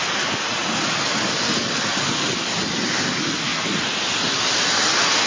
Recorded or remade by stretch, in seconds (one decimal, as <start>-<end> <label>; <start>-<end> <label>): 0.0-5.3 recorded